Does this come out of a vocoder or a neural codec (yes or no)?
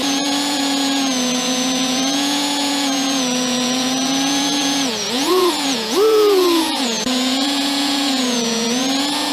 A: yes